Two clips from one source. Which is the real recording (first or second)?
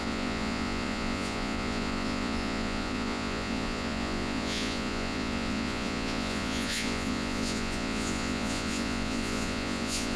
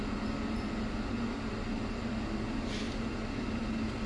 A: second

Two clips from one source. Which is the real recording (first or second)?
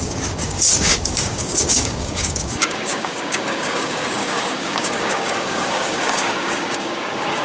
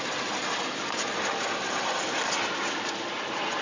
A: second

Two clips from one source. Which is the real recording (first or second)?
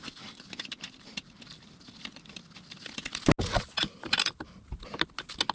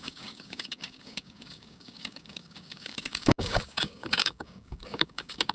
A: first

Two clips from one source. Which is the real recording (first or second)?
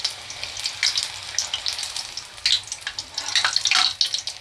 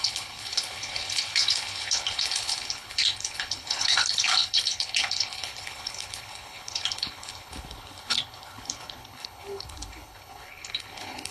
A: first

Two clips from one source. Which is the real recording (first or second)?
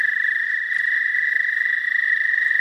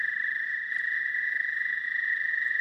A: first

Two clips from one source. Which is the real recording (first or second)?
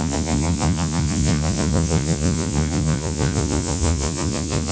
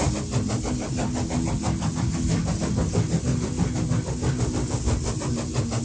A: second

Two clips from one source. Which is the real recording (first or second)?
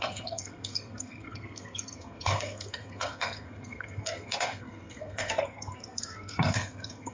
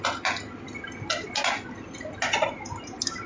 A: second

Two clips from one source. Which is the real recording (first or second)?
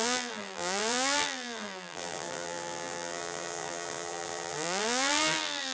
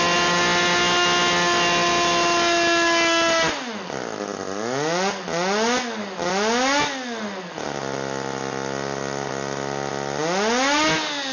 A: second